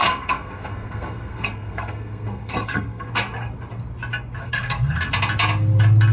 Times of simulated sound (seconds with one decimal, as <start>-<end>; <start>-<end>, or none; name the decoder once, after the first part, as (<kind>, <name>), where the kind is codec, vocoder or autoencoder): 0.0-3.1 (codec, SNAC); 4.4-5.1